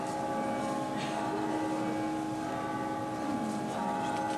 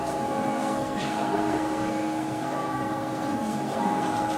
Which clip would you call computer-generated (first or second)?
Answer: second